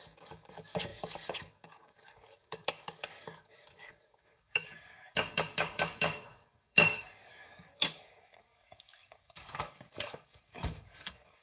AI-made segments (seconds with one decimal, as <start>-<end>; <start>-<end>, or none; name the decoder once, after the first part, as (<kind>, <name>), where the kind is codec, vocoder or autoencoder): 0.0-11.4 (codec, DAC)